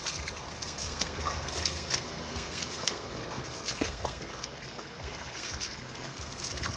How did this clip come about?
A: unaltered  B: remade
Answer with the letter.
B